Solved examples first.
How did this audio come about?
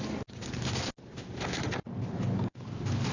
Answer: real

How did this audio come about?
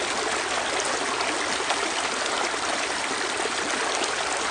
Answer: real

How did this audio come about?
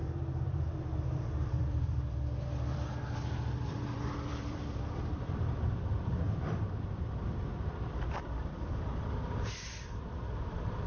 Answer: fake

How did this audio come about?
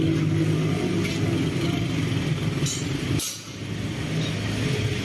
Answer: real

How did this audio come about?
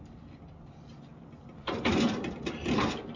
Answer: real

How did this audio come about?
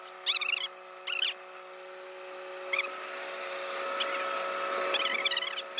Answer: real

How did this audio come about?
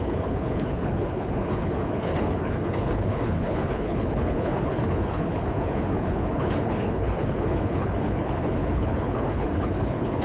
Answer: fake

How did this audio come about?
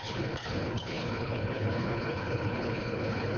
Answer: fake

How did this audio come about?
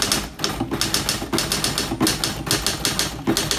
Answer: real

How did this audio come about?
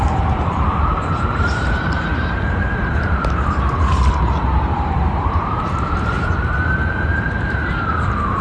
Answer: fake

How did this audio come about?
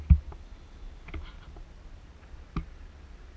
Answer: real